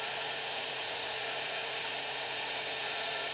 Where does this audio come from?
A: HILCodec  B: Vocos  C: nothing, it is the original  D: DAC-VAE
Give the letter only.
B